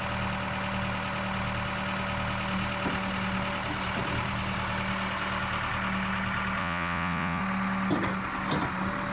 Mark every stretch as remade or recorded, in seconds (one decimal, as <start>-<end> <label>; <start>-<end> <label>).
0.0-6.6 recorded; 6.6-7.4 remade; 7.4-9.1 recorded